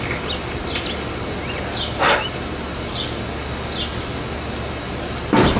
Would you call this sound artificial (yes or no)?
no